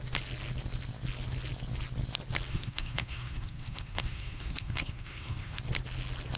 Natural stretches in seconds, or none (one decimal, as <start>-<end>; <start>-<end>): 0.0-2.5; 5.6-6.4